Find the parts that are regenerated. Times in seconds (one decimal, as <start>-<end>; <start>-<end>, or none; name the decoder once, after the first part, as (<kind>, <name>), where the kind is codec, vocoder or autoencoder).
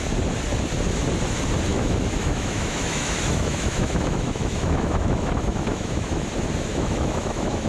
1.7-6.3 (autoencoder, DAC-VAE); 6.7-7.7